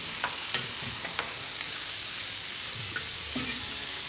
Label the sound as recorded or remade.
remade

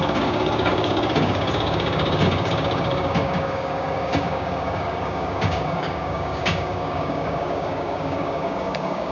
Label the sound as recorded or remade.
remade